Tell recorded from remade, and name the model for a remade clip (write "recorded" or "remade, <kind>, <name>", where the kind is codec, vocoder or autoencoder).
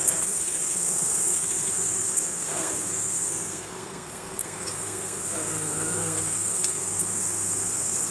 remade, codec, SNAC